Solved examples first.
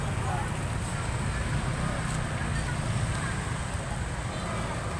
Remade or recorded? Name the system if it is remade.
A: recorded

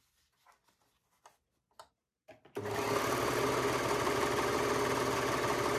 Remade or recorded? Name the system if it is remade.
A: recorded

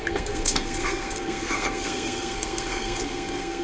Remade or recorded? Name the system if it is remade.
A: remade, codec, SNAC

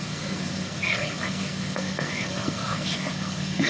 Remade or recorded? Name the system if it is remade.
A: remade, codec, SNAC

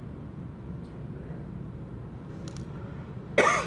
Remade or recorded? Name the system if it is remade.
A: recorded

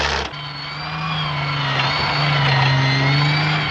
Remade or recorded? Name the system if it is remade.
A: recorded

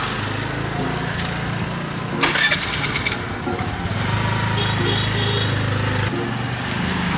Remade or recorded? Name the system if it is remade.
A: recorded